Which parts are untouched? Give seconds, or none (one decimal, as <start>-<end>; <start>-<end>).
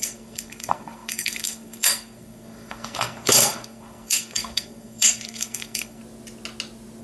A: 6.0-7.0